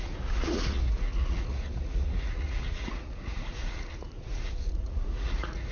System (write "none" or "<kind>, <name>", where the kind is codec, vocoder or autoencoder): vocoder, Vocos